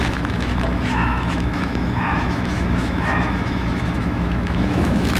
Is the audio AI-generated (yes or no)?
yes